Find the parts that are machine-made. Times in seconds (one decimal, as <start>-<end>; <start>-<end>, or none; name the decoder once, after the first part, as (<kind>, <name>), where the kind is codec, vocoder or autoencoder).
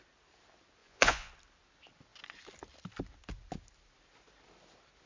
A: 0.8-1.3 (vocoder, Vocos)